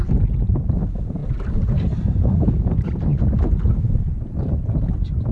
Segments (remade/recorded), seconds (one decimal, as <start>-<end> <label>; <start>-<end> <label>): 0.0-5.3 recorded